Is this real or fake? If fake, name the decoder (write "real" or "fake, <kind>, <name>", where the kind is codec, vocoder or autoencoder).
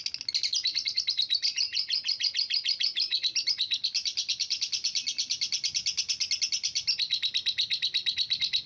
real